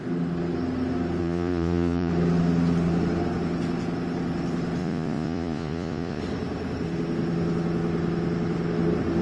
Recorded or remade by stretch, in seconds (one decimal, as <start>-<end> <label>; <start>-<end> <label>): 0.0-1.2 recorded; 1.2-2.1 remade; 2.1-4.8 recorded; 4.8-6.2 remade; 6.2-9.2 recorded